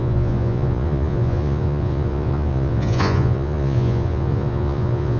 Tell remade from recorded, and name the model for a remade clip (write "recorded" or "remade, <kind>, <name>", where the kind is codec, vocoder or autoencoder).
remade, vocoder, Vocos